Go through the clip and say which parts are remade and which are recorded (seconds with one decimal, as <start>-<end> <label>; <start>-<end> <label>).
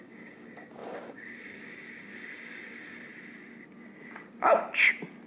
0.0-3.1 remade; 3.1-5.3 recorded